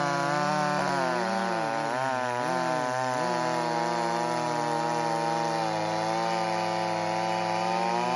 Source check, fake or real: real